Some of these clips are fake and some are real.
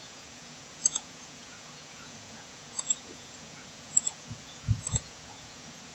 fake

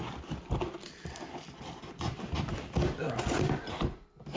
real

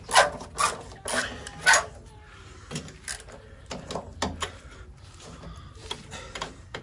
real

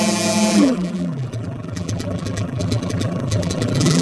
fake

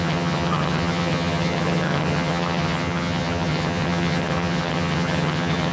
fake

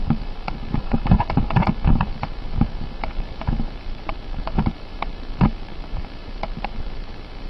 fake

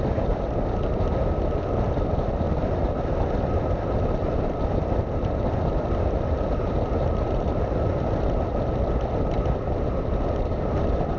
real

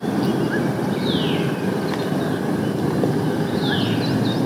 real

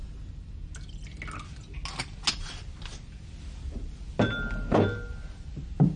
real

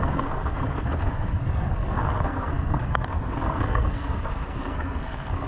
fake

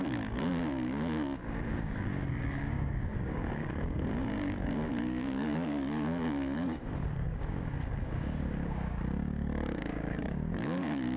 fake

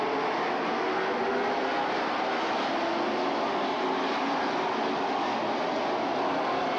real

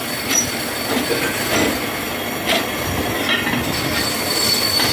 real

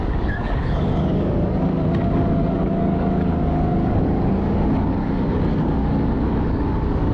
fake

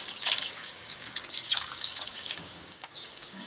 fake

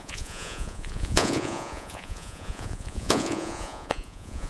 fake